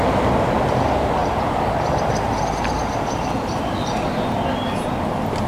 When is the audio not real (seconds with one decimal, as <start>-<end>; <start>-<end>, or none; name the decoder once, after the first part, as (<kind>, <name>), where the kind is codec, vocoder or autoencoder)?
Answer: none